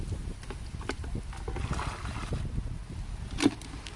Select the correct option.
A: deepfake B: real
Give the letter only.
B